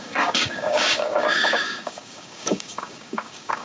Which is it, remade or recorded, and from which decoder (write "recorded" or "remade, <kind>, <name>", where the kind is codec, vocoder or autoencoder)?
remade, codec, DAC